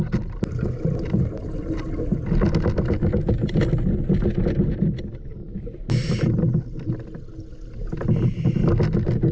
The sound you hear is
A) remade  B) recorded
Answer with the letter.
B